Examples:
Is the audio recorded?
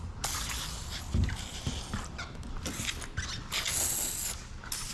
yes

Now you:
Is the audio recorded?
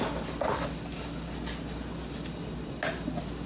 yes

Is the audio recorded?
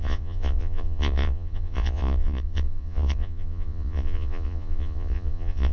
no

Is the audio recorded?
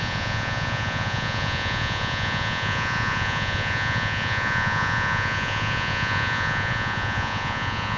no